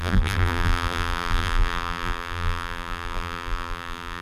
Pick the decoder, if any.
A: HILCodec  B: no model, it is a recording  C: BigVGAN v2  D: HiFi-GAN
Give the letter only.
C